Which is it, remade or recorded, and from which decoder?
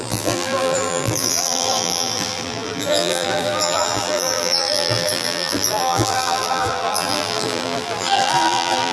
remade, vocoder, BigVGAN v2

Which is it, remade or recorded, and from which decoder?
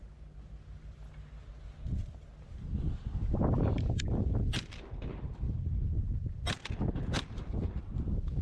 recorded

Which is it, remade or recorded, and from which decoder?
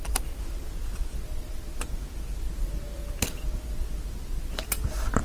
remade, vocoder, BigVGAN v2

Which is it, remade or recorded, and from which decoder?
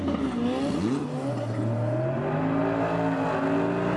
recorded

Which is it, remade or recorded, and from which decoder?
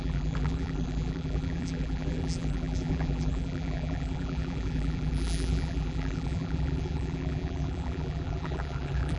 remade, vocoder, BigVGAN v2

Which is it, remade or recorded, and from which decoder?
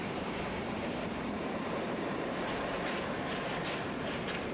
remade, vocoder, BigVGAN v2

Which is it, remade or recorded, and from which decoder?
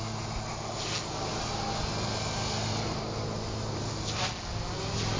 recorded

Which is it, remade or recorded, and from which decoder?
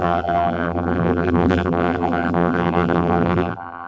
remade, vocoder, BigVGAN v2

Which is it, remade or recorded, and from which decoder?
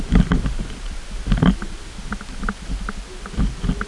recorded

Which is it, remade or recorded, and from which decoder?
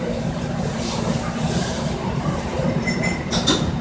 remade, vocoder, BigVGAN v2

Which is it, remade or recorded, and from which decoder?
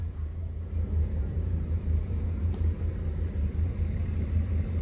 remade, vocoder, BigVGAN v2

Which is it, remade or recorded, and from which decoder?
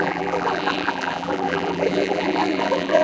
remade, vocoder, BigVGAN v2